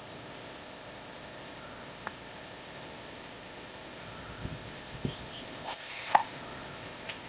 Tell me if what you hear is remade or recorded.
remade